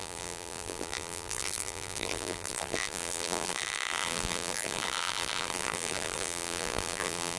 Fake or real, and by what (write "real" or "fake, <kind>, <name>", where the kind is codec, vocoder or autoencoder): fake, vocoder, BigVGAN v2